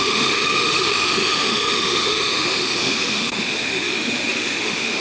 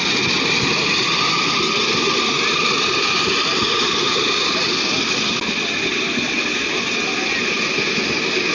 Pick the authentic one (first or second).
second